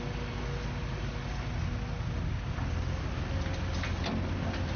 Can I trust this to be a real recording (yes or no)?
yes